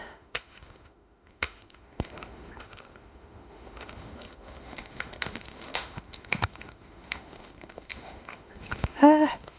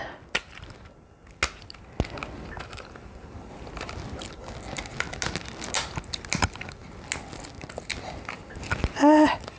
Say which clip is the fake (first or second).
first